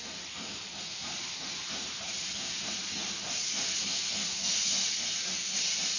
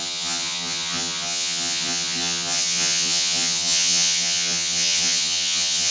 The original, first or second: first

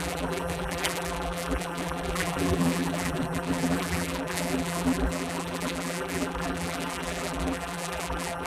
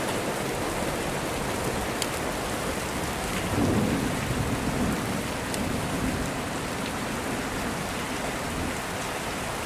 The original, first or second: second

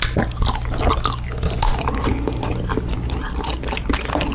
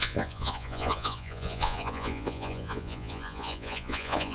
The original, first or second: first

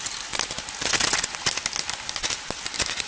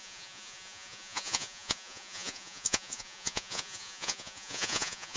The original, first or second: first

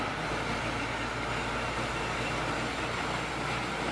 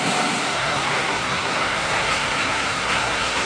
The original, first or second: first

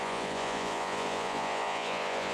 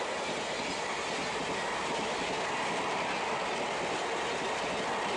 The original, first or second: second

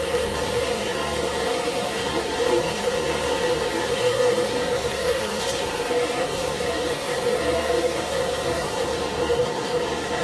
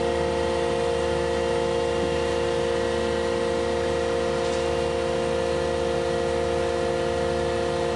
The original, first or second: second